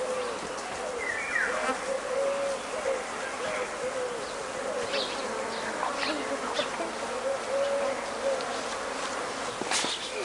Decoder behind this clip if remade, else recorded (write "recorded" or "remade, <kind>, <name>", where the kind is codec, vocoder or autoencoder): recorded